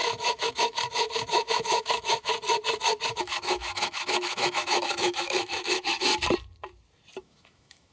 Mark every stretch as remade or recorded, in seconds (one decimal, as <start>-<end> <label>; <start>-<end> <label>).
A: 0.0-2.3 remade; 2.3-3.1 recorded; 3.1-6.1 remade; 6.1-7.2 recorded; 7.2-7.9 remade